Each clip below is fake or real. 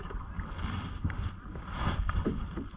real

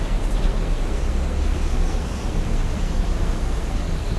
fake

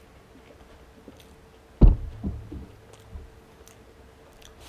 real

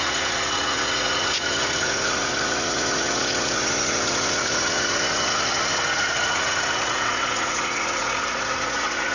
fake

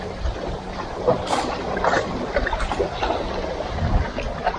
fake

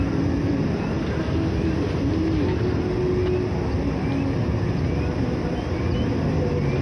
real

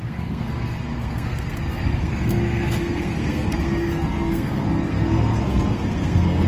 fake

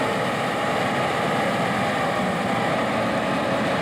real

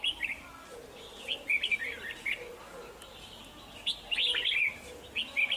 real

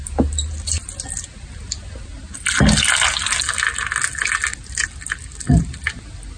real